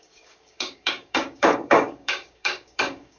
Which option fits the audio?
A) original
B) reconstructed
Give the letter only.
B